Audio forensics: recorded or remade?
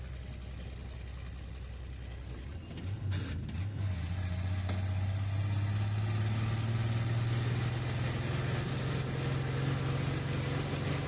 recorded